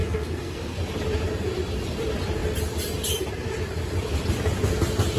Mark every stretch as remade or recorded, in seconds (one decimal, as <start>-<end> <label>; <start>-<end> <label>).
0.0-0.8 remade; 0.8-5.2 recorded